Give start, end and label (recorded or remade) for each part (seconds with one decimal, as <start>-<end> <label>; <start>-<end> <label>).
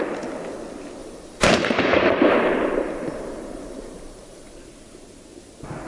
0.0-1.0 recorded; 1.0-4.5 remade; 4.5-5.9 recorded